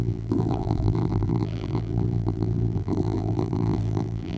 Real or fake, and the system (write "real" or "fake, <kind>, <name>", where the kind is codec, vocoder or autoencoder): fake, vocoder, BigVGAN v2